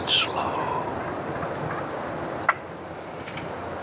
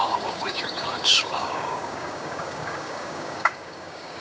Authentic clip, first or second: first